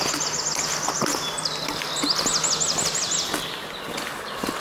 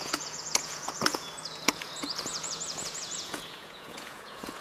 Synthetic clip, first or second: second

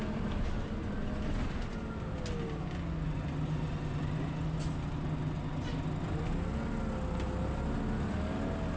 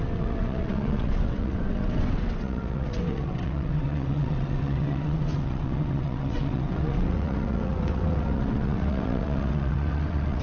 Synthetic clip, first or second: second